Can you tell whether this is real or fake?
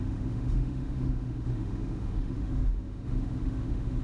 fake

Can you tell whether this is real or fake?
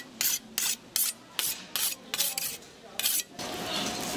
real